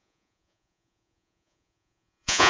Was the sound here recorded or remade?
remade